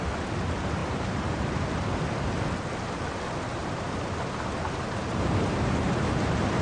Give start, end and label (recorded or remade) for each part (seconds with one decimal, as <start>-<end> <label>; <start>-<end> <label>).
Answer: 0.0-0.8 recorded; 0.8-1.6 remade; 1.6-3.6 recorded; 3.6-4.1 remade; 4.1-5.0 recorded; 5.0-6.6 remade